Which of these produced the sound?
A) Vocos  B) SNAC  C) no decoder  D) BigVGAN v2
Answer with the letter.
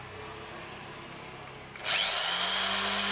C